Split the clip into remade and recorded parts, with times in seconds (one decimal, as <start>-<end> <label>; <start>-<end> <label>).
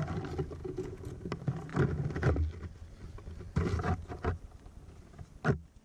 0.0-0.6 recorded; 0.6-1.2 remade; 1.2-5.8 recorded